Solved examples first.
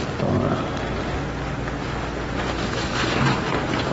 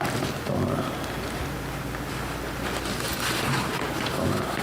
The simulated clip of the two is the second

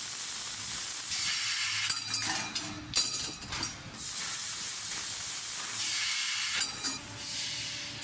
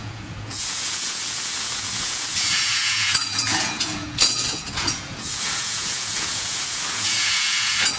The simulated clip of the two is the second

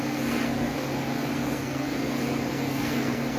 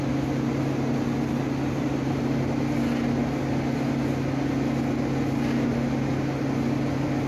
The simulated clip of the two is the first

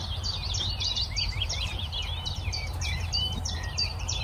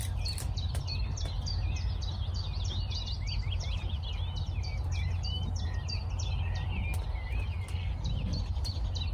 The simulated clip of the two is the first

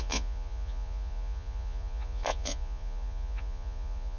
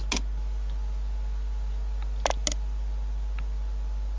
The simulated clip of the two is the first